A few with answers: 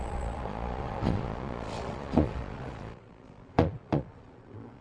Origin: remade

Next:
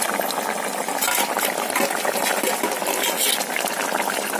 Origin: recorded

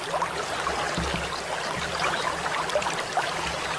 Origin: recorded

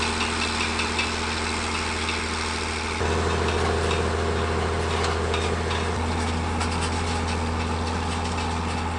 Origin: recorded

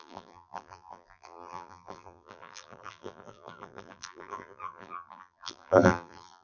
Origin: remade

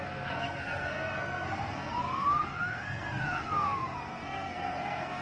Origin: remade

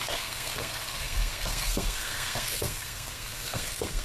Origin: remade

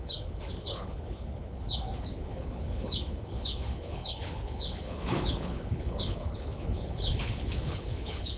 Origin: remade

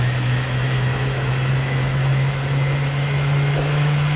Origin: remade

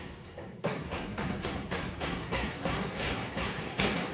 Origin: remade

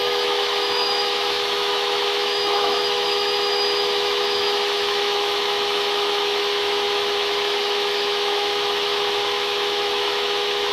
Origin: remade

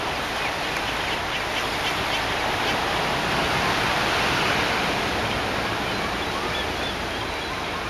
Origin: recorded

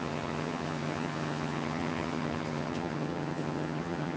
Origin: remade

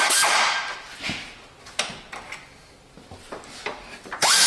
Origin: recorded